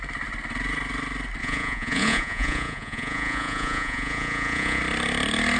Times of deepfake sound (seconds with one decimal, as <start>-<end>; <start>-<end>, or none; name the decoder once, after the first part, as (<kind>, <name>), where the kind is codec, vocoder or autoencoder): 1.4-4.8 (vocoder, Vocos)